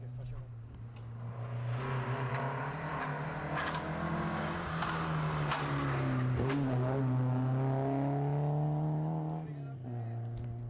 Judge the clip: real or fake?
real